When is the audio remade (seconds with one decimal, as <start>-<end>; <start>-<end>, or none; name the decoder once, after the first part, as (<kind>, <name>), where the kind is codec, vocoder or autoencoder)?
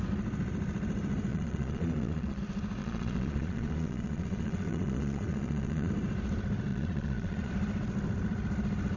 1.3-2.4 (vocoder, Vocos); 2.8-5.9; 6.7-7.5